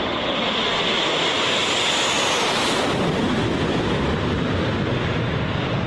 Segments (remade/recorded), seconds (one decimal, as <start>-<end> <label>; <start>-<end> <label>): 0.0-5.9 recorded